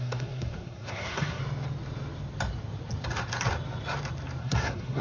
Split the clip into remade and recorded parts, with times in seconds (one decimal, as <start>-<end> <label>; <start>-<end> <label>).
0.0-1.4 remade; 1.4-4.4 recorded; 4.4-5.0 remade